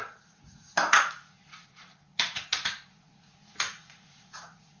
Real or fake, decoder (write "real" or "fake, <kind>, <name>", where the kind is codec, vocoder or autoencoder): fake, vocoder, Vocos